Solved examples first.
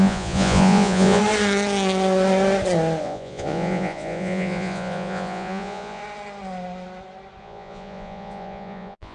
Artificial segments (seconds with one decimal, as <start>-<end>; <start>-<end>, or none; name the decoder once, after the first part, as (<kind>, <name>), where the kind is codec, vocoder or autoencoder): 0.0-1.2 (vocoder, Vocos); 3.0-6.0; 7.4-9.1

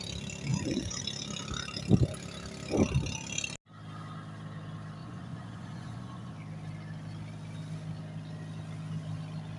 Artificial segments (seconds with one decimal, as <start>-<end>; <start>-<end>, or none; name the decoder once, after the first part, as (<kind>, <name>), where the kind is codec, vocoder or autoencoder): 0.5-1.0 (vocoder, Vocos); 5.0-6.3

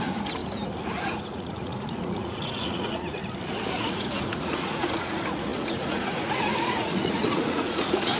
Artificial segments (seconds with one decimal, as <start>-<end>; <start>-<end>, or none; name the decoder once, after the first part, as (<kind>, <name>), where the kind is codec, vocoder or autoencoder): 0.0-0.4 (vocoder, Vocos); 1.0-3.2; 3.8-8.2